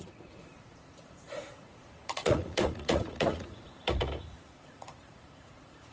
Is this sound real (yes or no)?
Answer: no